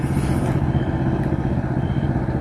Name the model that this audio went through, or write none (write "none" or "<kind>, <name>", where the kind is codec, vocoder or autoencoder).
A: none